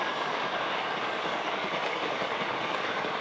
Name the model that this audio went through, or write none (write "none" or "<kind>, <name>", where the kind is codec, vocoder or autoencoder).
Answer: codec, DAC